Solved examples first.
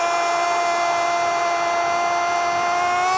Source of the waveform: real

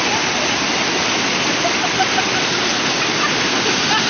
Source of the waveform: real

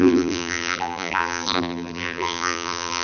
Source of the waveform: fake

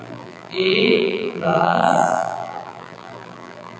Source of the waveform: fake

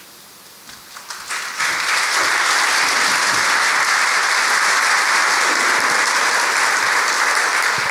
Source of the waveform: real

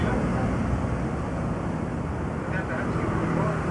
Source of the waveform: real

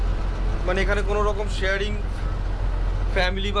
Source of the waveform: real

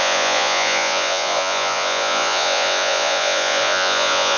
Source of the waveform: fake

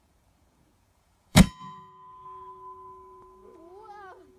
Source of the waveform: fake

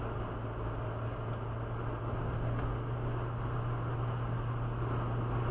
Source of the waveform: real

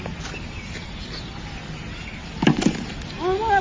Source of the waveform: real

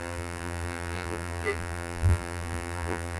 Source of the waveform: fake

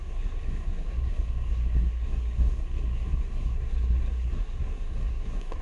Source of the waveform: fake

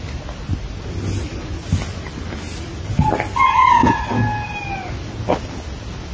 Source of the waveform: real